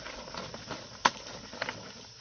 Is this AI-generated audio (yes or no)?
no